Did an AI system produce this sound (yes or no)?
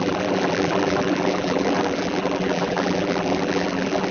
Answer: yes